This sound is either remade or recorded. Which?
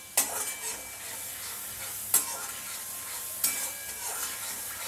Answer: recorded